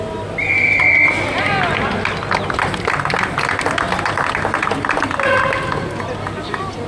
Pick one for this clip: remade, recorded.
recorded